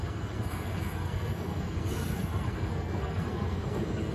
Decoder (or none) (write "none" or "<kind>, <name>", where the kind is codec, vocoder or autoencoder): codec, SNAC